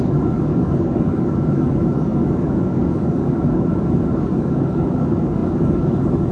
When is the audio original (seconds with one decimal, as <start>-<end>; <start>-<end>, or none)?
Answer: none